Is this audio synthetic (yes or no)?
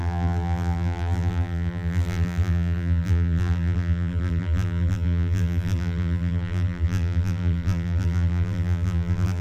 yes